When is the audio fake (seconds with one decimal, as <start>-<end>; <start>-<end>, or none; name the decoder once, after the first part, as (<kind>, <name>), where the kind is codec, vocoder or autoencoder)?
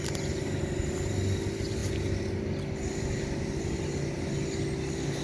none